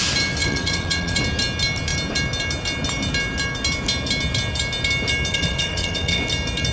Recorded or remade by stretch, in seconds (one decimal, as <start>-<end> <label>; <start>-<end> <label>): 0.0-0.4 recorded; 0.4-1.2 remade; 1.2-5.3 recorded; 5.3-6.2 remade; 6.2-6.7 recorded